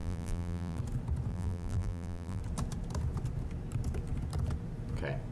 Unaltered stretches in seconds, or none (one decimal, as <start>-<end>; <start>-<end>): 0.8-1.3; 2.4-5.3